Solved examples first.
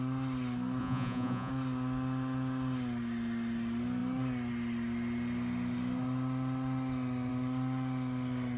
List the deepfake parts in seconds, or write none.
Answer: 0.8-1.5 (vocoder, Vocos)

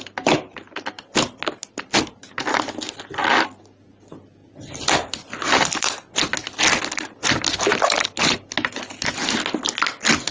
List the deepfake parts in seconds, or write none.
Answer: none

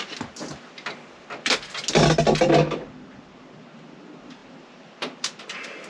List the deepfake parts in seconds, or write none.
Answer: none

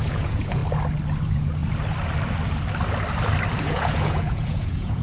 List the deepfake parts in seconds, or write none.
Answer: 0.0-0.6 (vocoder, Vocos); 1.2-1.6; 3.6-5.0

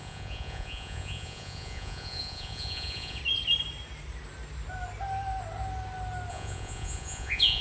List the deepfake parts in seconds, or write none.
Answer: 0.0-3.2 (vocoder, Vocos); 6.3-7.6